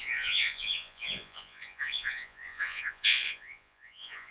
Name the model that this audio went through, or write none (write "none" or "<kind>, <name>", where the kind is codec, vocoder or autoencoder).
vocoder, Vocos